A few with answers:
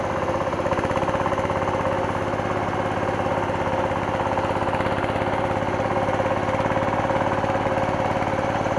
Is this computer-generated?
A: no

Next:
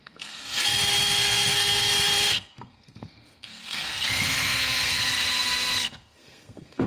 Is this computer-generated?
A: yes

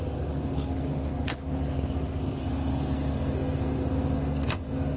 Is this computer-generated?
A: yes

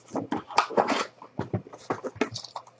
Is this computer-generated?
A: no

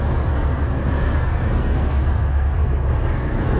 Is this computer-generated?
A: yes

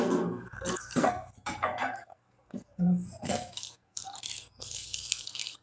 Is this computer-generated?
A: yes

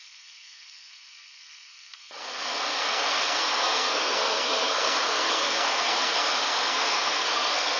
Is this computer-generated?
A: yes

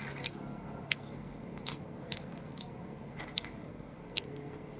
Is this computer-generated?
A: yes